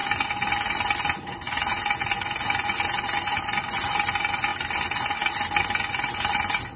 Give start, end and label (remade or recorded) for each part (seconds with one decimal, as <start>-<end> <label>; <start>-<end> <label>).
0.0-6.8 recorded